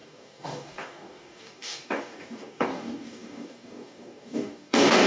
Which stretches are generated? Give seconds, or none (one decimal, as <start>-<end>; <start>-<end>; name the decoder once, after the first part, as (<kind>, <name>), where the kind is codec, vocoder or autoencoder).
0.0-5.1 (codec, DAC)